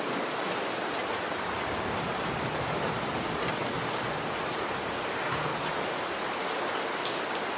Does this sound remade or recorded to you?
recorded